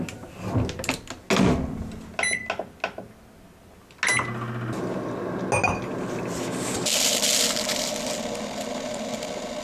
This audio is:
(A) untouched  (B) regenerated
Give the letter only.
A